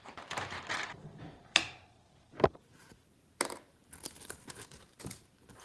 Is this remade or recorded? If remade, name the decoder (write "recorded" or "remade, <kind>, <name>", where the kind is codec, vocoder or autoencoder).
remade, vocoder, BigVGAN v2